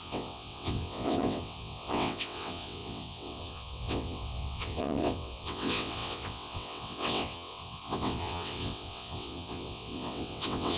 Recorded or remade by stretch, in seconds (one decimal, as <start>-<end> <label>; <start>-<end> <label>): 0.0-10.8 remade